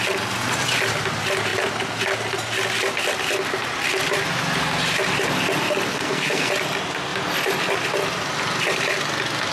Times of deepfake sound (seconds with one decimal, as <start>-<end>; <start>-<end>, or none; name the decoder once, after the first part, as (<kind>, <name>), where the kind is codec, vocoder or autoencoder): 5.9-6.5 (codec, SNAC)